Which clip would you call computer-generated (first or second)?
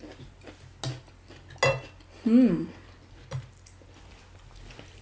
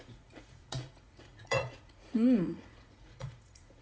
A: second